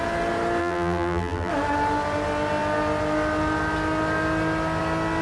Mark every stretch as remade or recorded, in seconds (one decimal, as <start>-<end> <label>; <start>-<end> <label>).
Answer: 0.0-0.6 recorded; 0.6-1.5 remade; 1.5-5.2 recorded

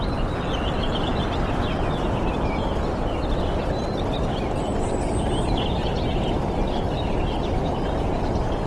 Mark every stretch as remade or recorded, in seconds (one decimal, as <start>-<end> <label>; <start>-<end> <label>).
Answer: 0.0-8.7 recorded

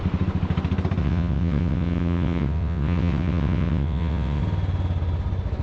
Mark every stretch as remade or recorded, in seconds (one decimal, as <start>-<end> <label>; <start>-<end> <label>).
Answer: 0.0-1.0 recorded; 1.0-4.4 remade; 4.4-5.6 recorded